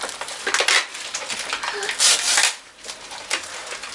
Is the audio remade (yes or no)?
no